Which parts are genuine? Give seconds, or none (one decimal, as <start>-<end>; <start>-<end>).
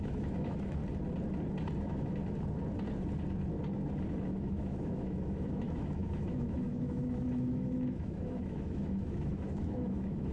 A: 0.8-1.8; 2.2-4.2